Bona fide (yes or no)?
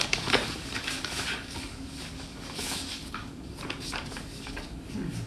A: no